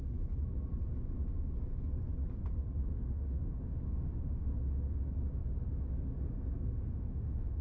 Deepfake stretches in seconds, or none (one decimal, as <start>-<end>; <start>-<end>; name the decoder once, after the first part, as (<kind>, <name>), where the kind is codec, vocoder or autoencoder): 2.8-4.5 (autoencoder, DAC-VAE); 6.8-7.6